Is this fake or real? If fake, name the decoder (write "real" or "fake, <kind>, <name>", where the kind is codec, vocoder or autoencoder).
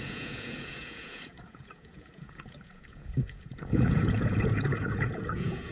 fake, vocoder, Vocos